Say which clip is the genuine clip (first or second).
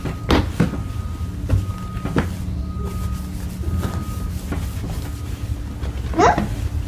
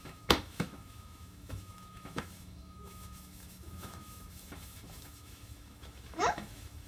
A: first